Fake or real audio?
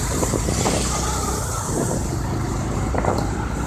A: real